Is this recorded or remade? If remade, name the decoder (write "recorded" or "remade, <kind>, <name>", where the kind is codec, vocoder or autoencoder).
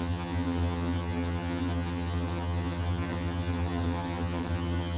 remade, vocoder, HiFi-GAN